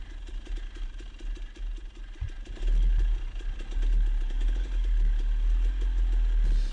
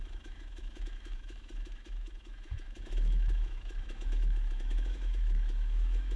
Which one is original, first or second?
first